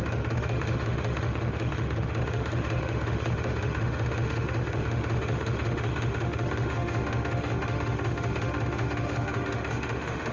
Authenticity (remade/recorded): remade